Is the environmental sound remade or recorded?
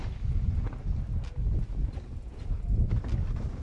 recorded